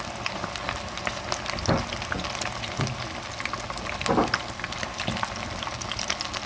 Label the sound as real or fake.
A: real